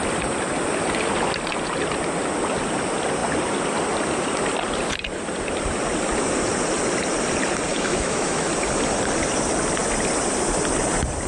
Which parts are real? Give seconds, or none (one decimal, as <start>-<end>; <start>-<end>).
0.0-7.7; 8.5-11.3

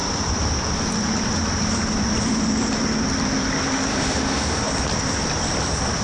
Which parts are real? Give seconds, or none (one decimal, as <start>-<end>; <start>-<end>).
0.0-3.9; 4.6-6.0

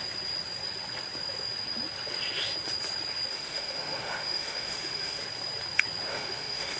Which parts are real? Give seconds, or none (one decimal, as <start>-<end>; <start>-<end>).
0.0-3.3; 5.2-6.1

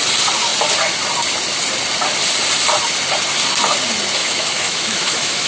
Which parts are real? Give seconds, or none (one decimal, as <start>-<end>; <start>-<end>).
0.0-4.2